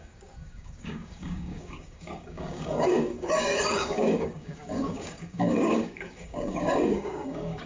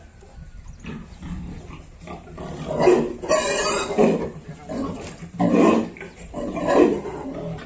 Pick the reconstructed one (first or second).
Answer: first